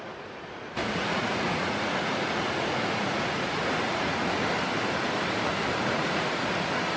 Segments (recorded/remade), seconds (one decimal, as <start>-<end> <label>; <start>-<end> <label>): 0.0-4.4 remade; 4.4-5.8 recorded; 5.8-7.0 remade